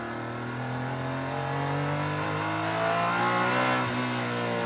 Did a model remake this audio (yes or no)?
no